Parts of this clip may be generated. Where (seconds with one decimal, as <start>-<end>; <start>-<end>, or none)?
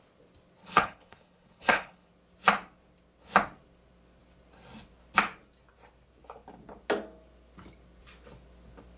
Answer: 0.6-2.1